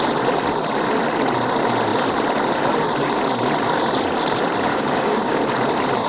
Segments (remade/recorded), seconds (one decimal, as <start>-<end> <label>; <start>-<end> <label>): 0.0-4.7 recorded; 4.7-5.4 remade; 5.4-6.1 recorded